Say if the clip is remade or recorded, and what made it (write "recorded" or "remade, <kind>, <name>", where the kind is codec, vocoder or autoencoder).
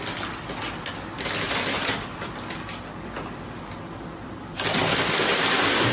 recorded